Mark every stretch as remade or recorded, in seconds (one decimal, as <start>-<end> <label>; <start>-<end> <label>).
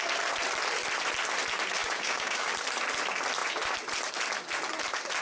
0.0-1.8 recorded; 1.8-2.5 remade; 2.5-5.2 recorded